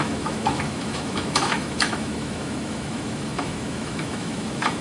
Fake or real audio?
fake